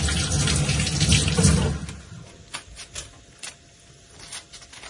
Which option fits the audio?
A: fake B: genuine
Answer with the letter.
B